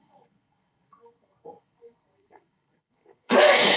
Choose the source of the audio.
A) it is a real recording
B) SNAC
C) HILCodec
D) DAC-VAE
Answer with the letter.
B